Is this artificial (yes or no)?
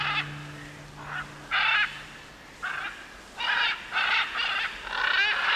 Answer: no